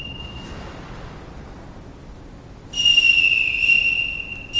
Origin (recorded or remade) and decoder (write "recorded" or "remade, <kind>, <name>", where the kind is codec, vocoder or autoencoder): recorded